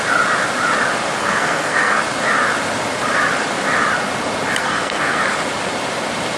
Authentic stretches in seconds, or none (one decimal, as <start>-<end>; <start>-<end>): 0.0-1.2; 2.0-4.6; 5.2-6.4